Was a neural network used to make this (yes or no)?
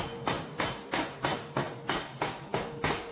no